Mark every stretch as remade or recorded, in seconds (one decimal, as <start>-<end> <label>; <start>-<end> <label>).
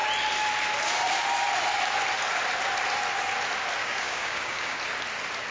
0.0-3.8 recorded; 3.8-4.8 remade; 4.8-5.5 recorded